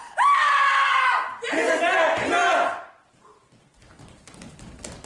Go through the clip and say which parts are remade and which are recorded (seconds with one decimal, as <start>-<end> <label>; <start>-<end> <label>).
0.0-5.1 recorded